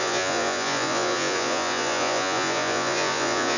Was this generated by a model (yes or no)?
yes